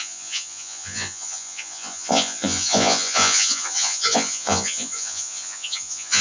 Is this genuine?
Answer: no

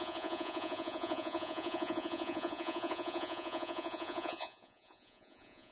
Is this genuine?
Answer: no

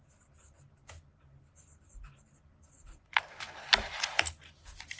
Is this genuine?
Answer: yes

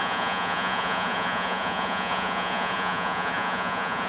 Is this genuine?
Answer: no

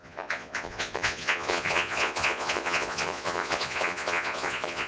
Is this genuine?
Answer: no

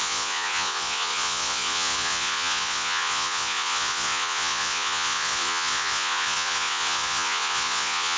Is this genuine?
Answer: no